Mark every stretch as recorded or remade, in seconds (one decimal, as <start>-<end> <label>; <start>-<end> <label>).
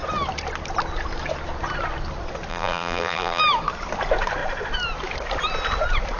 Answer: 0.0-2.5 recorded; 2.5-3.4 remade; 3.4-6.2 recorded